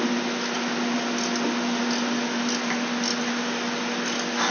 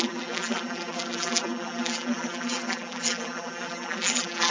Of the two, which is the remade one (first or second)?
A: second